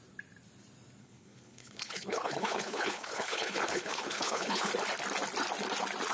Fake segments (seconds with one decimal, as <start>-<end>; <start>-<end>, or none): 1.0-4.7